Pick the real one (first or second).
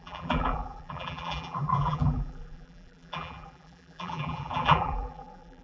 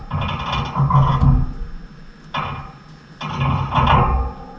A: second